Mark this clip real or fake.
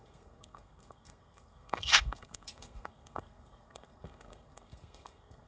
fake